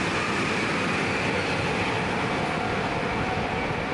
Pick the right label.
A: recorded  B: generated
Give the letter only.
A